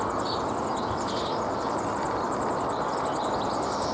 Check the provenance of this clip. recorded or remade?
recorded